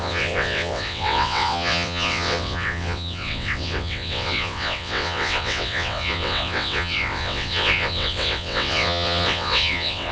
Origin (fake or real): fake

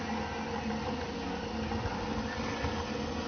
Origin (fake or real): real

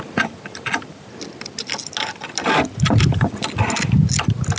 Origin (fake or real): real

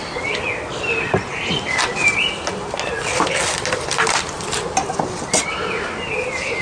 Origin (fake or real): real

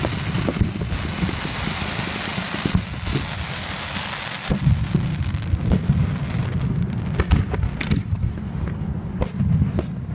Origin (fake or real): real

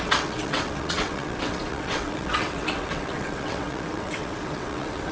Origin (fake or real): fake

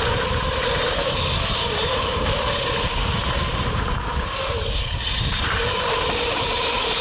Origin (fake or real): real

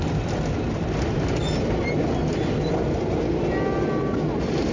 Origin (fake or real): real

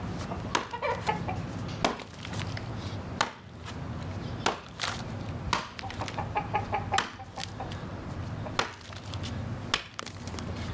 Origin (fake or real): real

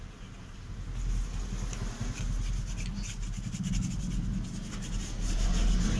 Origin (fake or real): real